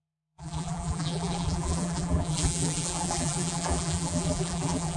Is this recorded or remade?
remade